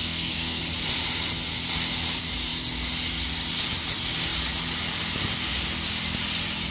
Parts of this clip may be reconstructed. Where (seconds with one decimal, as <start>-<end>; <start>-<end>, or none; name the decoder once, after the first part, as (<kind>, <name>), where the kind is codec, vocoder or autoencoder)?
0.0-0.6 (codec, SNAC)